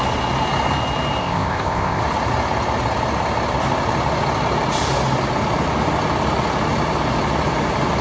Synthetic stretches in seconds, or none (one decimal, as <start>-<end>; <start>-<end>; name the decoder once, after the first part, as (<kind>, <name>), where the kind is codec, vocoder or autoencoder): 1.2-2.0 (codec, ZipCodec)